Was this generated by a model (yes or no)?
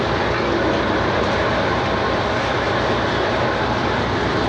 no